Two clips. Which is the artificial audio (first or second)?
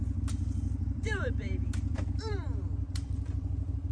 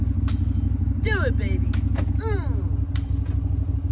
first